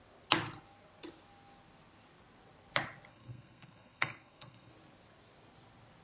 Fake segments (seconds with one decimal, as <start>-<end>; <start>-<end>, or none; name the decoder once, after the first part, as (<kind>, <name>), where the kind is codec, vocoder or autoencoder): 3.1-4.7 (codec, SNAC)